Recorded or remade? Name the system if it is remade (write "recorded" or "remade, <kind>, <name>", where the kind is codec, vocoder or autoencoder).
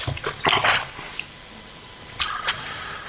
recorded